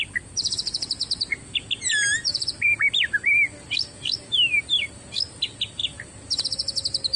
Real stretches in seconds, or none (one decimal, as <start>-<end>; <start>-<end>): 0.0-7.2